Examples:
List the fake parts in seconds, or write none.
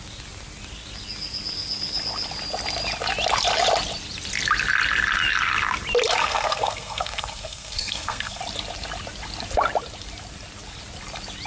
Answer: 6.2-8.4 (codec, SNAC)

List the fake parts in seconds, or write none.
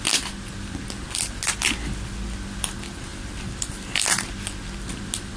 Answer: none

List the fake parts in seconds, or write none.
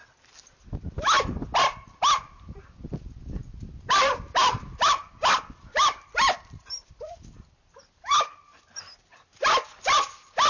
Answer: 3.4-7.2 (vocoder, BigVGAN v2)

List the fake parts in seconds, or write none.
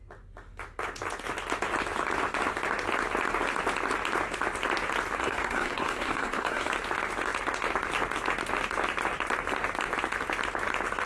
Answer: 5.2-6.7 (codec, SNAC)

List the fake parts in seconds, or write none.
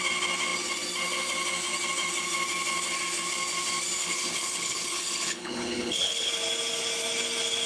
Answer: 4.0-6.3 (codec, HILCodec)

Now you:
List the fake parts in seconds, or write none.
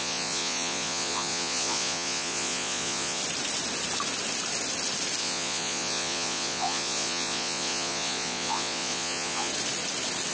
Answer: 0.0-3.2 (vocoder, Vocos); 5.2-9.5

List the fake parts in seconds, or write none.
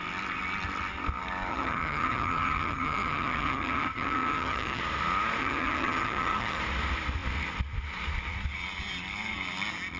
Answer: 1.5-4.8 (vocoder, HiFi-GAN); 5.4-6.6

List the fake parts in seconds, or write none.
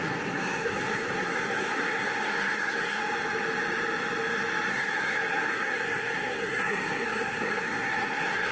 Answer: 0.0-3.0 (codec, SNAC); 4.7-8.5